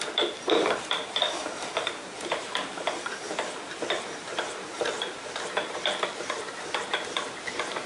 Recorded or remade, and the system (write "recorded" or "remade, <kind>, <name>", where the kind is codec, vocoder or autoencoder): remade, vocoder, BigVGAN v2